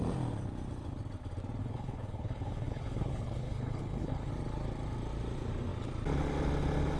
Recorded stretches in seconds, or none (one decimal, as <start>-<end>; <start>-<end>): 0.0-1.6; 4.3-7.0